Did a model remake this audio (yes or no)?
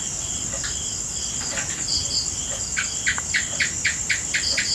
no